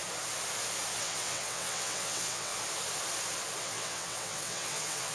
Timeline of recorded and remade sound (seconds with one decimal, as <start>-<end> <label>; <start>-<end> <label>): 0.0-1.0 recorded; 1.0-2.5 remade; 2.5-3.6 recorded; 3.6-5.1 remade